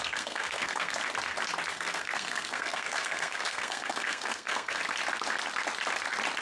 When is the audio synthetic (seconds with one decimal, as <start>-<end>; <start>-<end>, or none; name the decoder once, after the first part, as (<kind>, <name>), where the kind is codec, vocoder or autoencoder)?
0.0-1.0 (codec, SNAC); 1.7-4.8

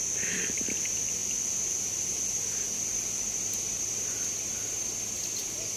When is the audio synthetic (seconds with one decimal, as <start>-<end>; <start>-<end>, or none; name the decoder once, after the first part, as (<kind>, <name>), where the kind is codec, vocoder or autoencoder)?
none

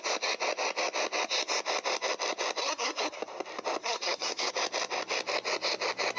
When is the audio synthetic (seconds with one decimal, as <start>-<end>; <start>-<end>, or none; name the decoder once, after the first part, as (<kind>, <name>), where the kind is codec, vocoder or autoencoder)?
2.6-3.2 (codec, SNAC); 3.8-4.5

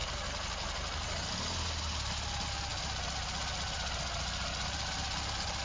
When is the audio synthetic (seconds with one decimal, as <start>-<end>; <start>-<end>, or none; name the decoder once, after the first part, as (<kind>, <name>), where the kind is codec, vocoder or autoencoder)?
none

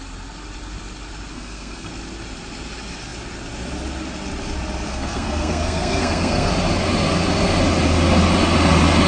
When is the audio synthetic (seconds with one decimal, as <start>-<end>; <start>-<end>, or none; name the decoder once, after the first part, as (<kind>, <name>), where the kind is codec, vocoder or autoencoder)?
1.3-1.9 (codec, SNAC); 4.9-6.5